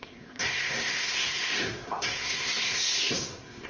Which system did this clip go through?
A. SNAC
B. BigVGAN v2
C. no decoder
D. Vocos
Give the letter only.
A